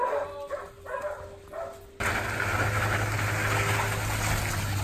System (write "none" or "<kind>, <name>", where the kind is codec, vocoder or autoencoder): none